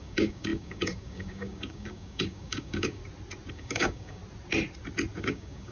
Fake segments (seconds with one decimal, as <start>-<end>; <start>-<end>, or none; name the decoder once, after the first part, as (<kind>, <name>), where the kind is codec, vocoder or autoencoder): 0.0-3.0 (codec, DAC); 3.5-4.2; 5.2-5.7